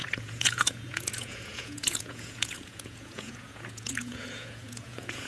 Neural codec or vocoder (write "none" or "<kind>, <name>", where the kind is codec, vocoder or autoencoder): vocoder, Vocos